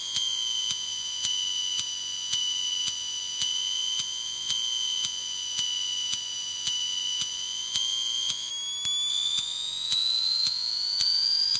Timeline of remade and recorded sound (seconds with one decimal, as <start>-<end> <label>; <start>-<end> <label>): 0.0-8.5 remade; 8.5-9.1 recorded; 9.1-11.6 remade